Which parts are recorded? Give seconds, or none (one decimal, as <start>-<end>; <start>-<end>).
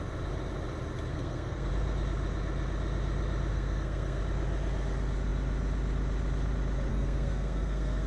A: 0.0-1.1; 1.7-3.5; 4.2-6.9